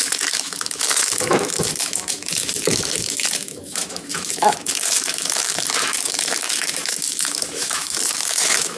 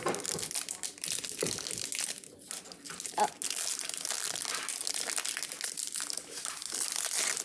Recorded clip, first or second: second